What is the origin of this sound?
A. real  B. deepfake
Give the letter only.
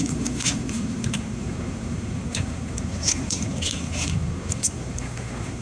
B